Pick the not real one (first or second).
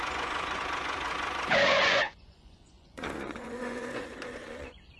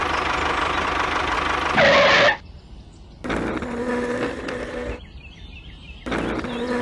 first